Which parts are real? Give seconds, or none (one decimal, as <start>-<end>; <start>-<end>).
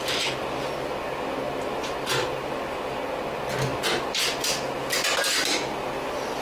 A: 0.0-6.4